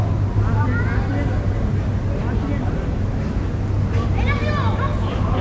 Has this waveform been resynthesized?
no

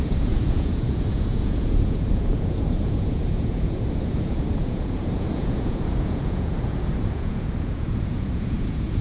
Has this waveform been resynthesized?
yes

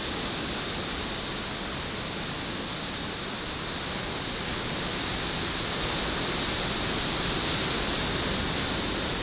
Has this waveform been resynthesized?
no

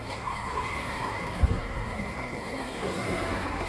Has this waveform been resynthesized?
yes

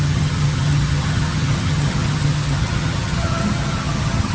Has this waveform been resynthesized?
yes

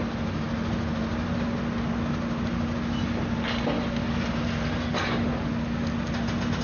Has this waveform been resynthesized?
no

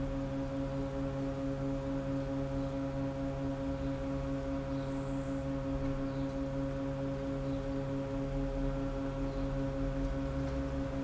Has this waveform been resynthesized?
no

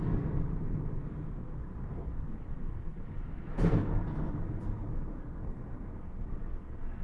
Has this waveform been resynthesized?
yes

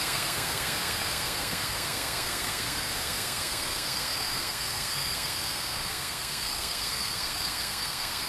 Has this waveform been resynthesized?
yes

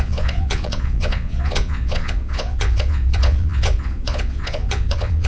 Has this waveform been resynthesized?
yes